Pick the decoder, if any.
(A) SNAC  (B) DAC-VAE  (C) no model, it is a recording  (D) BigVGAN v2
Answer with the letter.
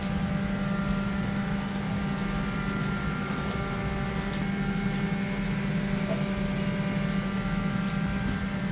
C